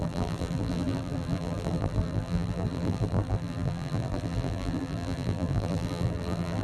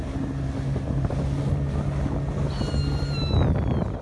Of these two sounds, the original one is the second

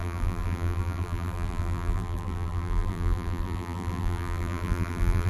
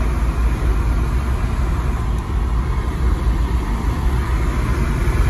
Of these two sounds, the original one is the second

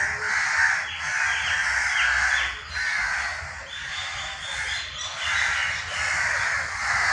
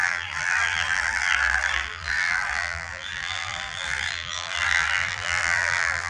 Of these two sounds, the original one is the first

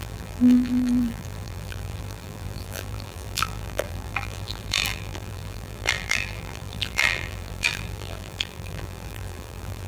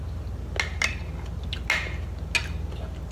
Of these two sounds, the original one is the second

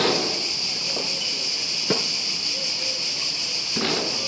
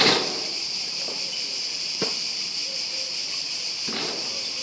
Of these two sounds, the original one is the first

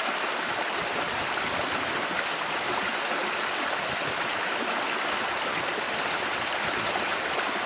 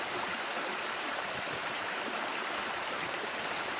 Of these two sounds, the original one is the first